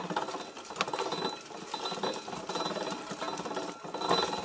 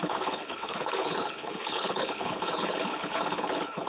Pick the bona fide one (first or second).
first